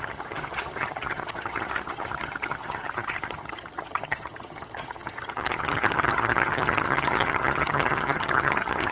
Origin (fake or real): fake